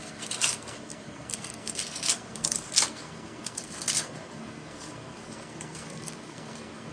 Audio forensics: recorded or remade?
remade